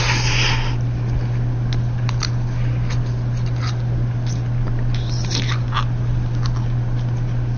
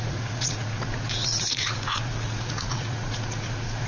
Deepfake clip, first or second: second